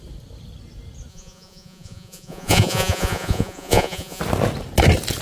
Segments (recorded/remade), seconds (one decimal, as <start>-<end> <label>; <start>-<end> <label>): 0.0-1.1 recorded; 1.1-4.2 remade; 4.2-5.2 recorded